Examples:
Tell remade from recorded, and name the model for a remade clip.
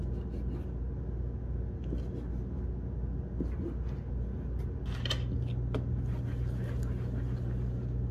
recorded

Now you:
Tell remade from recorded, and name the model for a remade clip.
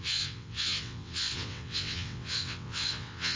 remade, vocoder, WaveNeXt